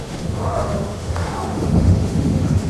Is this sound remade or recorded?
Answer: remade